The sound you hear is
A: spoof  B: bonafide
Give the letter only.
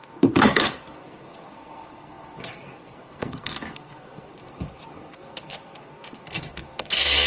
A